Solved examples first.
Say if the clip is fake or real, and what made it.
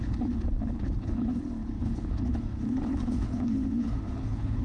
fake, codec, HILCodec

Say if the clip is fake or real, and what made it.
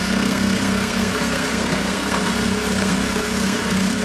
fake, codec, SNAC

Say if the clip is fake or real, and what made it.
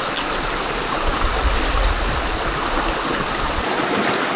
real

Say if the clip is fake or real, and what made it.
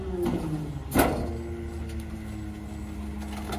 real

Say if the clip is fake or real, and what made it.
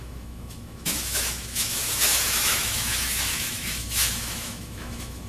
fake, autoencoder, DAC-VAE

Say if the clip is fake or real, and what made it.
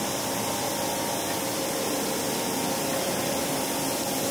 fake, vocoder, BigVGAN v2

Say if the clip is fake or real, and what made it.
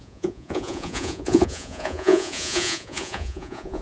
fake, vocoder, Vocos